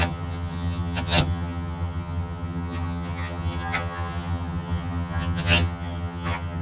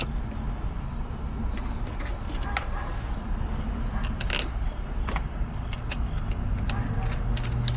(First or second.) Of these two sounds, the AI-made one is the first